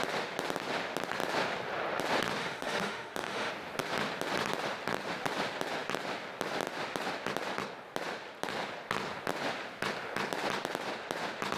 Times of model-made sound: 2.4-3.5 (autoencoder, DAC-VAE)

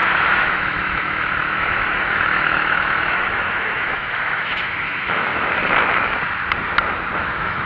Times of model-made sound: 0.0-5.3 (autoencoder, DAC-VAE); 7.2-7.7

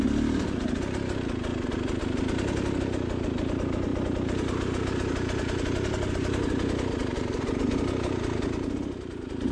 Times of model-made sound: none